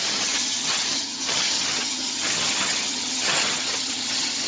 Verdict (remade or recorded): remade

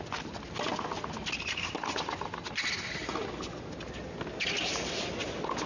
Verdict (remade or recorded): recorded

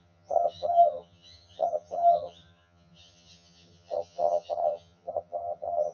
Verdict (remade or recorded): remade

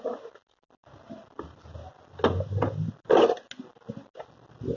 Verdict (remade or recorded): recorded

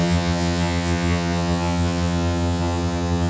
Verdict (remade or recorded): remade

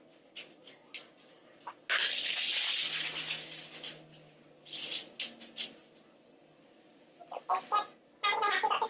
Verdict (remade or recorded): recorded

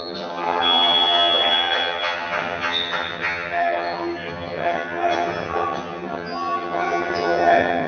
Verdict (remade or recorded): remade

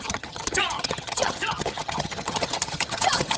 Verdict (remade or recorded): remade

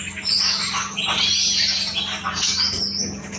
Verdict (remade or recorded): recorded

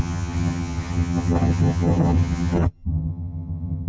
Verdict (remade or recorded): remade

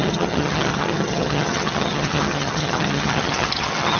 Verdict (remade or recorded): remade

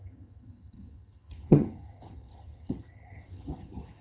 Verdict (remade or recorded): remade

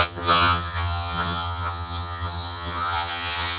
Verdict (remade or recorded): remade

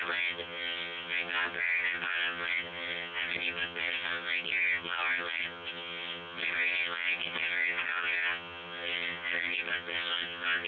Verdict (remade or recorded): remade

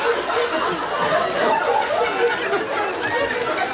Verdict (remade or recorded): recorded